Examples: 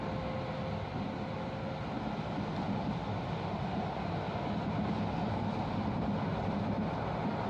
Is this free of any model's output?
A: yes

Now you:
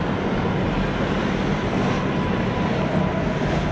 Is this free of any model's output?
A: yes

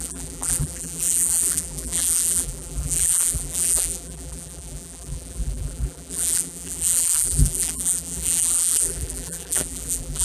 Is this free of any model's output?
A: no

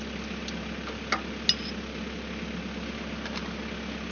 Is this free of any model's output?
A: yes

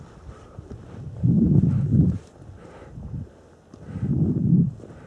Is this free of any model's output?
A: yes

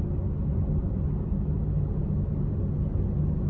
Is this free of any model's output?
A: yes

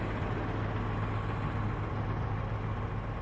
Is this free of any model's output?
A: yes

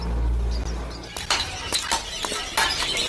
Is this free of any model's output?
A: yes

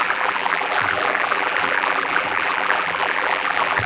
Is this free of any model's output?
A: no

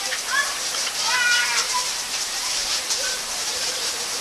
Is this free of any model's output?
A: no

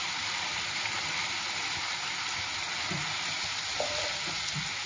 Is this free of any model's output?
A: no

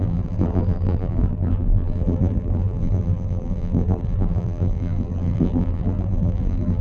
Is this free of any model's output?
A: no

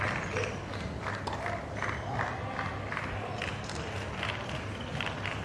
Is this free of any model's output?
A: yes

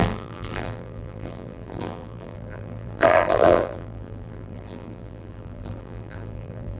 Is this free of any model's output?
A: no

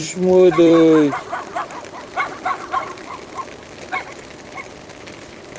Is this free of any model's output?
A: no